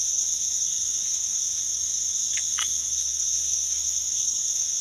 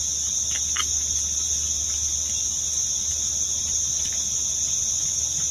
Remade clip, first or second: first